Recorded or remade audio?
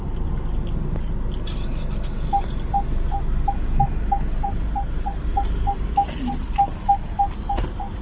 recorded